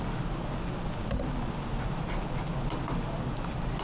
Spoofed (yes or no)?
no